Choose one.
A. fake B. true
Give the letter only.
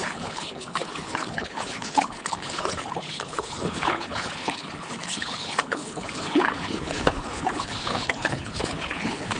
A